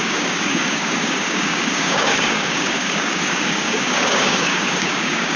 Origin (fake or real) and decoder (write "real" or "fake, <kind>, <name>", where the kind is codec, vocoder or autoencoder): fake, codec, DAC